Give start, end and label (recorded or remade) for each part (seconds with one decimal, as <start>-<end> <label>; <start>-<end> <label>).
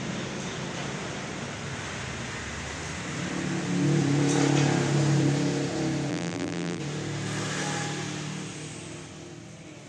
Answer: 0.0-6.1 recorded; 6.1-6.8 remade; 6.8-9.9 recorded